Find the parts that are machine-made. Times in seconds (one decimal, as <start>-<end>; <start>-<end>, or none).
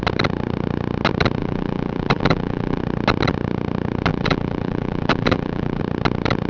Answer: 1.4-2.8; 4.1-5.8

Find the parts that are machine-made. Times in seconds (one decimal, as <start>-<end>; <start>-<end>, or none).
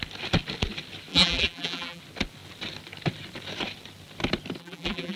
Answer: 1.1-2.0; 4.6-5.2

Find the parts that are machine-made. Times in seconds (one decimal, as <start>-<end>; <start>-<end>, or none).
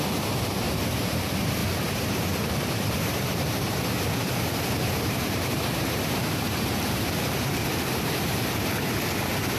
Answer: 0.0-9.6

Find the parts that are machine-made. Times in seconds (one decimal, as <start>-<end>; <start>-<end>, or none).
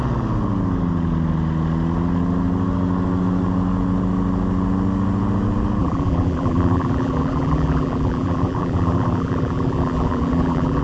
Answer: 5.8-10.8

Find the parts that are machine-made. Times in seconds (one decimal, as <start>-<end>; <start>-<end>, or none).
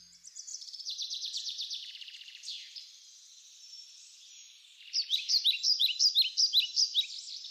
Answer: 0.5-3.8; 5.1-6.0